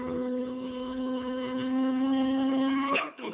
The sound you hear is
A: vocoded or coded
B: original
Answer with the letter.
A